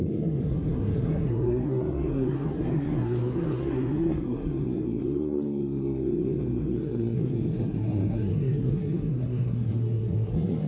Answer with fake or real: fake